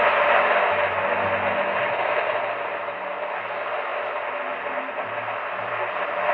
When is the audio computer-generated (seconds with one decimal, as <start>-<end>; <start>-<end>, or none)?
none